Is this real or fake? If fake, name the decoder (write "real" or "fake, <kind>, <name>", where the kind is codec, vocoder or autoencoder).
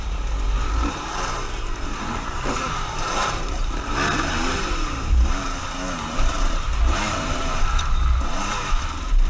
fake, vocoder, BigVGAN v2